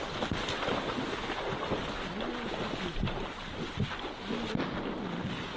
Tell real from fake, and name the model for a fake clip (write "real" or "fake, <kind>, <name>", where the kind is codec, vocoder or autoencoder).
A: real